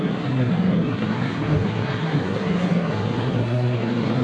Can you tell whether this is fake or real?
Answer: fake